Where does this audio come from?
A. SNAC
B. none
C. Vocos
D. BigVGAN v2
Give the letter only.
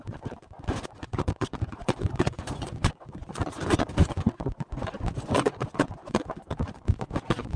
C